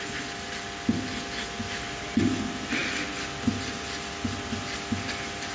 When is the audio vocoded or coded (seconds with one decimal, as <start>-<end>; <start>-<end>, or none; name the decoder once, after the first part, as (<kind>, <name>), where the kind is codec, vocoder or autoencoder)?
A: none